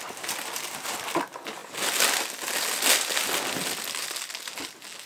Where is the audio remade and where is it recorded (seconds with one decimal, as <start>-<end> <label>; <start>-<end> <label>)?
0.0-5.1 recorded